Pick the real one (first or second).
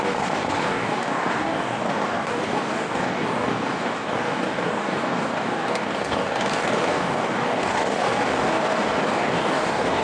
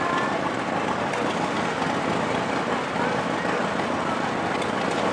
second